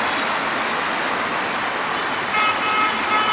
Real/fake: real